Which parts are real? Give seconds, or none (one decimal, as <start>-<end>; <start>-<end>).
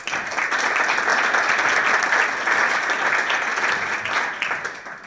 0.0-5.1